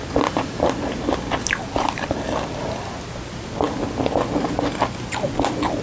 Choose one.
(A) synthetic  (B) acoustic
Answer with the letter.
B